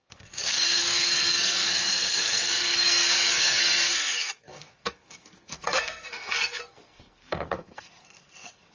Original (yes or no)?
no